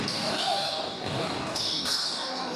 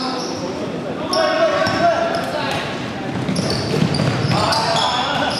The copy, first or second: first